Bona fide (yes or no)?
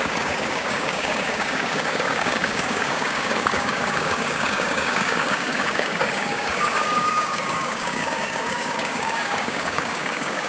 no